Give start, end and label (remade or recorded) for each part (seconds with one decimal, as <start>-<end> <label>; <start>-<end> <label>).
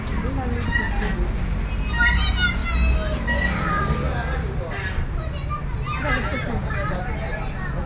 0.0-7.9 recorded